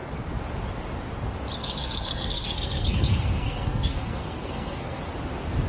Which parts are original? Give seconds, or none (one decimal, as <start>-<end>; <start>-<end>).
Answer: 0.0-1.6; 5.0-5.7